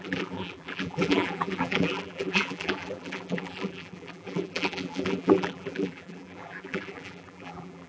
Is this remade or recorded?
remade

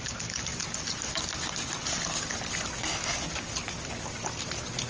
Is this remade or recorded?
recorded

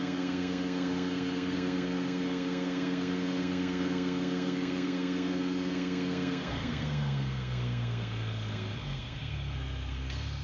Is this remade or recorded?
remade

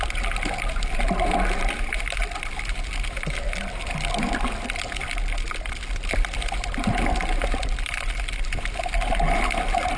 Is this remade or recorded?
recorded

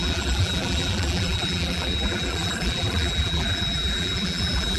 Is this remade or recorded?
remade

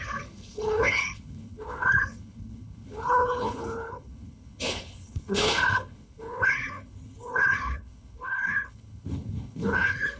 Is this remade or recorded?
remade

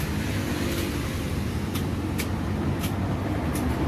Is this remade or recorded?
recorded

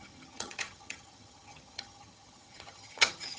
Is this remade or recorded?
remade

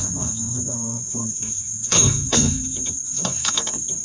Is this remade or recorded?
remade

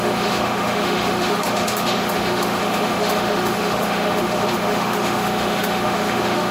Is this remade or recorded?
remade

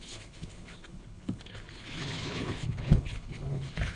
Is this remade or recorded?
remade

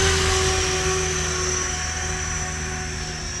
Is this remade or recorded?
recorded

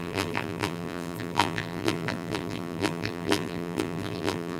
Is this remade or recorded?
remade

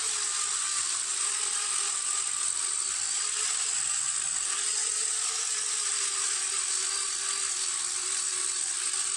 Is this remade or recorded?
recorded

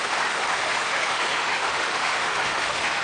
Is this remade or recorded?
remade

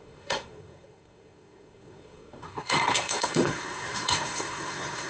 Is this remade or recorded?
remade